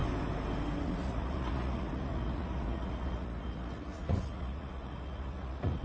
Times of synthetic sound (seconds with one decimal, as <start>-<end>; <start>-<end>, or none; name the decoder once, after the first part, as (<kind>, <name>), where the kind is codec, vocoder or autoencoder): 0.8-5.8 (vocoder, Vocos)